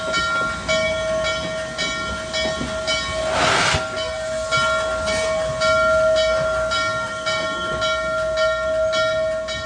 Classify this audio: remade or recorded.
recorded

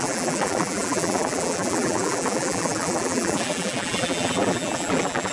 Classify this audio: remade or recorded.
remade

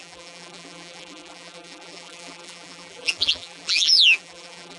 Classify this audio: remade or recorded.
remade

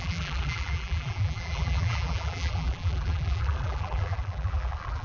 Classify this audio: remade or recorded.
remade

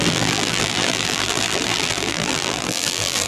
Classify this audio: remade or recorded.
remade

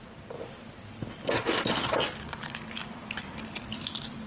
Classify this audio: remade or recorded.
remade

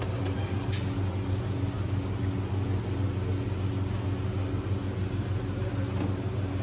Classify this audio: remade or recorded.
recorded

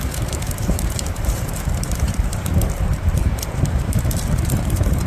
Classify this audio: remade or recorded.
remade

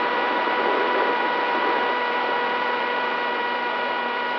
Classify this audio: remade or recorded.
remade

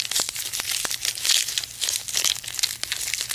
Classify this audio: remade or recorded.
recorded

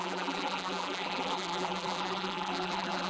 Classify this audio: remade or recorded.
remade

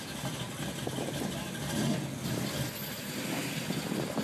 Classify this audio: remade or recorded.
recorded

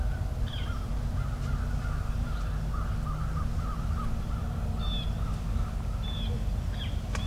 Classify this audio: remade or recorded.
recorded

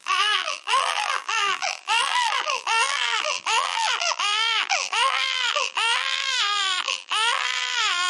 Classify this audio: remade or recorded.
remade